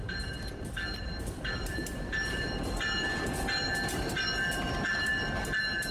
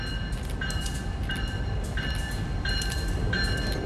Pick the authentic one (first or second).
second